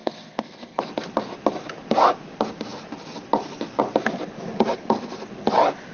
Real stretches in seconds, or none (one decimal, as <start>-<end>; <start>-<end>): 0.8-5.9

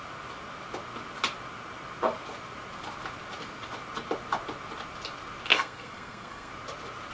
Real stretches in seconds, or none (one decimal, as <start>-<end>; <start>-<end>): 0.0-5.5; 6.5-7.1

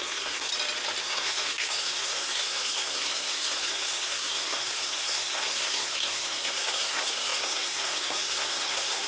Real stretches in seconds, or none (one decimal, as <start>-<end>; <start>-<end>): 0.5-1.0

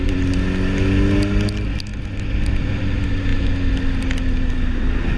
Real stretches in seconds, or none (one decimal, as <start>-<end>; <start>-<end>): 0.0-5.2

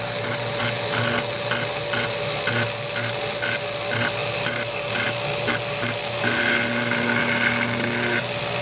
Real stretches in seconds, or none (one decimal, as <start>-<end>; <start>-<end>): 0.0-8.6

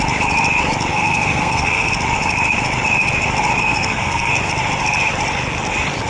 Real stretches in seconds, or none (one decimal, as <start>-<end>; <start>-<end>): 0.0-0.9; 1.9-3.6; 4.3-6.1

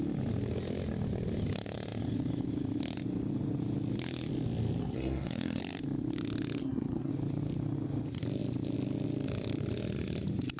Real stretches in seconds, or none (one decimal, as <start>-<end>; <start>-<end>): 0.0-4.8; 5.6-6.6; 7.1-10.6